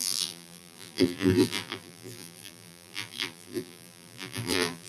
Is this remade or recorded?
remade